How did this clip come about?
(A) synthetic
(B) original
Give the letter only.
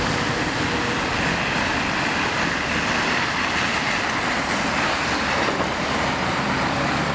B